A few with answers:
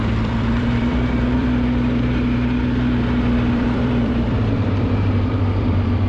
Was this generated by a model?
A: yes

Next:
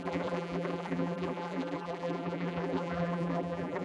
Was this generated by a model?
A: yes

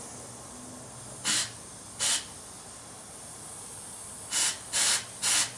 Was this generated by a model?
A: no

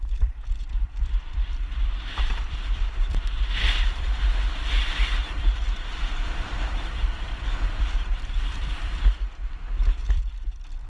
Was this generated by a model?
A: yes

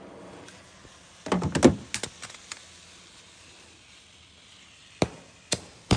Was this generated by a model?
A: no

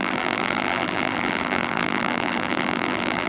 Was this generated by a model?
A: yes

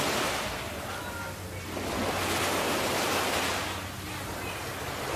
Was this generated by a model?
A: no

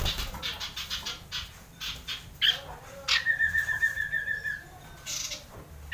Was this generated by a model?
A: no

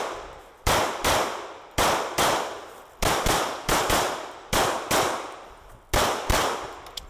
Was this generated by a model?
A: no